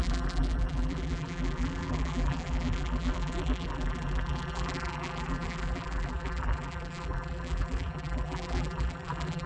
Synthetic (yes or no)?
yes